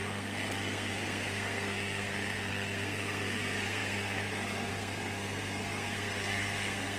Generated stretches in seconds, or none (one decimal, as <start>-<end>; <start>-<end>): 0.0-7.0